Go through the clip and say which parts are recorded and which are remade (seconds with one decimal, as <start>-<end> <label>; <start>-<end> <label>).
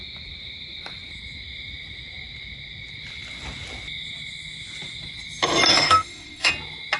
0.0-5.7 recorded; 5.7-6.5 remade; 6.5-7.0 recorded